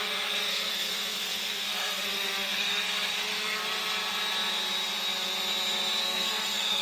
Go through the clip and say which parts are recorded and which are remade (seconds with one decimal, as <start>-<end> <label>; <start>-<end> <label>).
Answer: 0.0-3.6 remade; 3.6-6.0 recorded; 6.0-6.8 remade